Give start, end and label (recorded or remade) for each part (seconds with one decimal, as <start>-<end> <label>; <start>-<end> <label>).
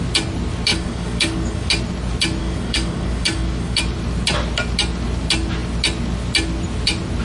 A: 0.0-0.7 recorded; 0.7-1.7 remade; 1.7-2.4 recorded; 2.4-3.8 remade; 3.8-7.2 recorded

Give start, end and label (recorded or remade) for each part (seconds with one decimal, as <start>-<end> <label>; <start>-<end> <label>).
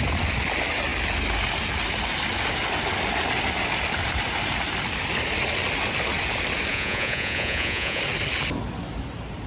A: 0.0-6.7 recorded; 6.7-8.0 remade; 8.0-9.5 recorded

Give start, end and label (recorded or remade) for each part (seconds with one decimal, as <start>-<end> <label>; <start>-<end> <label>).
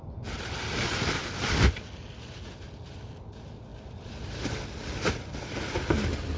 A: 0.0-6.4 recorded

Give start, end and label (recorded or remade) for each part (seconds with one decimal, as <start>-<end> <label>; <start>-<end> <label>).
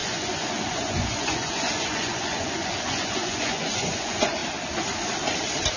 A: 0.0-4.4 remade; 4.4-5.8 recorded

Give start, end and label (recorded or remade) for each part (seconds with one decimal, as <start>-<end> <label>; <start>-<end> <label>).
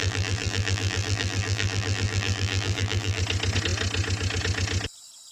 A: 0.0-3.2 remade; 3.2-5.3 recorded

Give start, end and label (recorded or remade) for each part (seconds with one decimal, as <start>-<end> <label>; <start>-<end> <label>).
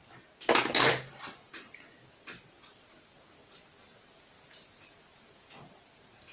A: 0.0-6.3 recorded